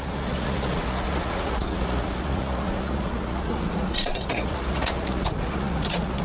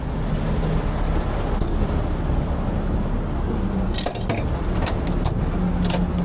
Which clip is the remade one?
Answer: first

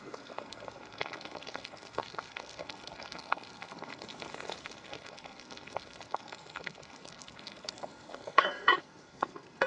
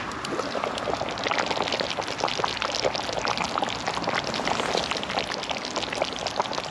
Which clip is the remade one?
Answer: first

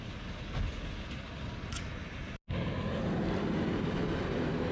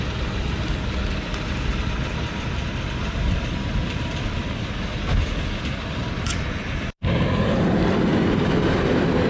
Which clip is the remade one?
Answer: second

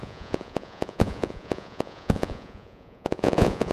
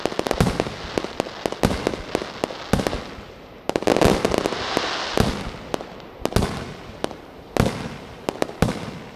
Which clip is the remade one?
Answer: first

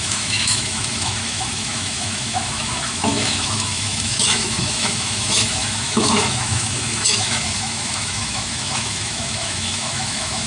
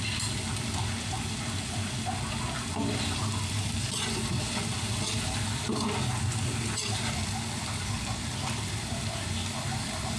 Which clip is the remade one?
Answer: first